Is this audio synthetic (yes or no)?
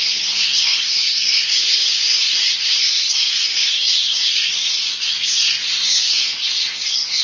yes